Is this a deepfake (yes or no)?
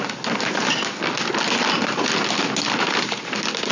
no